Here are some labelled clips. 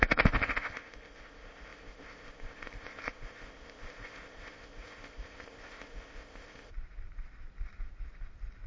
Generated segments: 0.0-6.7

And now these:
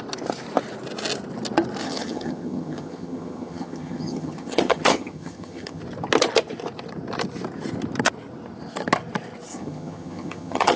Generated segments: 1.8-5.8; 9.5-10.8